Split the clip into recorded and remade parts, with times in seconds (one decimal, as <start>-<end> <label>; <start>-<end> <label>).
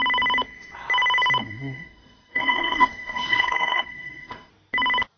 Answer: 0.0-1.4 recorded; 1.4-4.5 remade; 4.5-5.2 recorded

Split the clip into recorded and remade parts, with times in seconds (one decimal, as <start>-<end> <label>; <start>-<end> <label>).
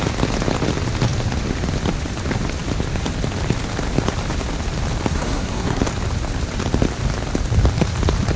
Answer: 0.0-5.1 recorded; 5.1-5.8 remade; 5.8-8.4 recorded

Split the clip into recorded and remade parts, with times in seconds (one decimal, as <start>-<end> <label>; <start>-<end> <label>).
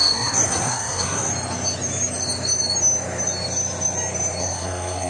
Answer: 0.0-1.3 remade; 1.3-4.4 recorded; 4.4-5.1 remade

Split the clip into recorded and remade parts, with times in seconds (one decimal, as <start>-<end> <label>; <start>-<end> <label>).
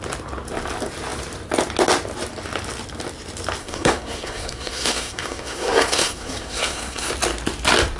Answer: 0.0-3.6 recorded; 3.6-7.1 remade; 7.1-8.0 recorded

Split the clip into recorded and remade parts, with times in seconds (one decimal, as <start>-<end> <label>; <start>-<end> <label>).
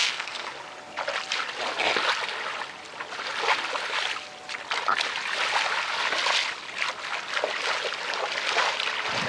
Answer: 0.0-0.5 remade; 0.5-9.3 recorded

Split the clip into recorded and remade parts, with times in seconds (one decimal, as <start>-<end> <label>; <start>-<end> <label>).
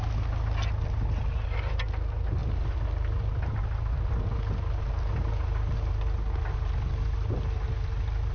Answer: 0.0-8.3 recorded